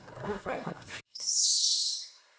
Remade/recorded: remade